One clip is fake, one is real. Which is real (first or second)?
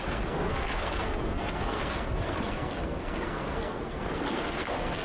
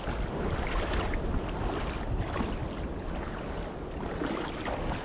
second